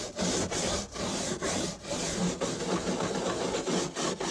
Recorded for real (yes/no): yes